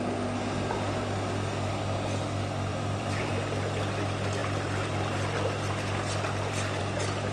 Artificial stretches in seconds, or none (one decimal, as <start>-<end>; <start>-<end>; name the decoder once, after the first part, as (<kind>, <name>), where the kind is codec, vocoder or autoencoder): 2.7-3.3 (vocoder, BigVGAN v2)